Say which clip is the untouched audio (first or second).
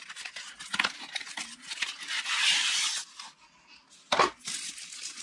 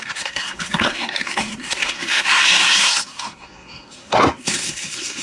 first